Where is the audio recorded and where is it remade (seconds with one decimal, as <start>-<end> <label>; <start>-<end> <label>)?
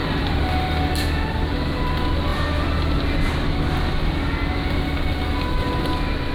0.0-1.3 remade; 1.3-6.3 recorded